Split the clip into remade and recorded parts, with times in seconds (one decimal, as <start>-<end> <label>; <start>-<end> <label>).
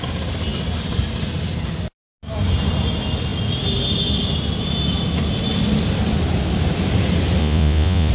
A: 0.0-7.4 recorded; 7.4-8.1 remade